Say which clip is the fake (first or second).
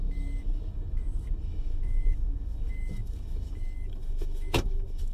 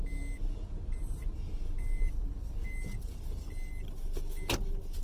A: first